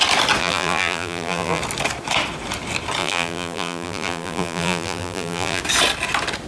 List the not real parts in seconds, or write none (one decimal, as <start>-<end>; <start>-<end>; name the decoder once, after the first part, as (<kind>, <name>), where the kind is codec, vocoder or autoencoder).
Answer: 0.4-1.6 (vocoder, BigVGAN v2); 3.0-5.6